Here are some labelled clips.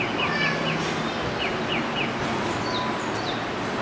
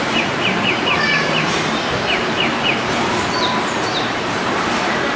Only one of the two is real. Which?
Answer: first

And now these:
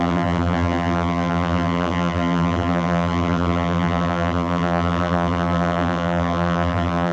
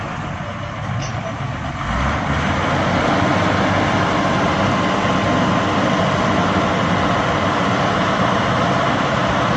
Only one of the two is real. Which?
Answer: second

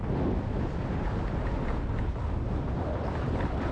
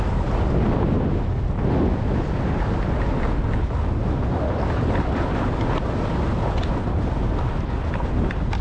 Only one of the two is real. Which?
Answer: second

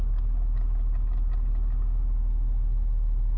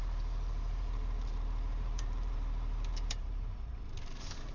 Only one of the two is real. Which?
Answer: first